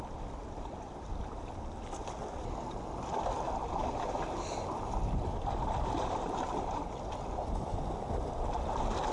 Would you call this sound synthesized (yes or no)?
no